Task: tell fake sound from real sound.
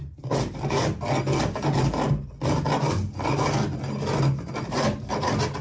real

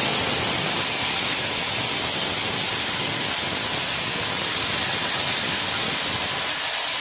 real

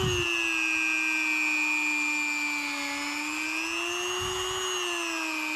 real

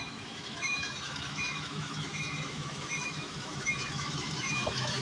fake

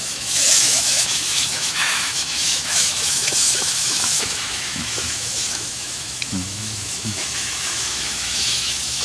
fake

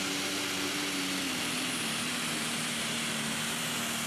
real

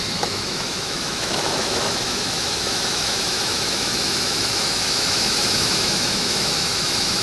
fake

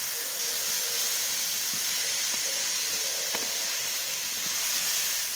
real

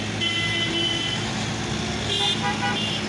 real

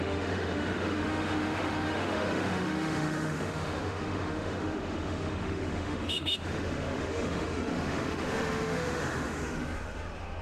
fake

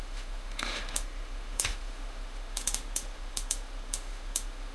fake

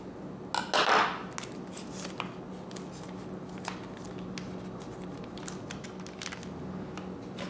real